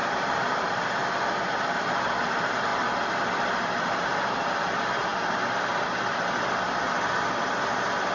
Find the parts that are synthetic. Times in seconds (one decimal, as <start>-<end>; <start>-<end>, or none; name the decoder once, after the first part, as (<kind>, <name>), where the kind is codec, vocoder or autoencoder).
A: 0.0-1.0 (vocoder, BigVGAN v2); 2.0-2.7; 4.1-8.1